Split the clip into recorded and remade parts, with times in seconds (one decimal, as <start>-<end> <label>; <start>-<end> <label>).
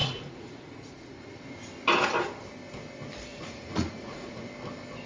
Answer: 0.0-1.3 remade; 1.3-3.3 recorded; 3.3-4.5 remade; 4.5-5.1 recorded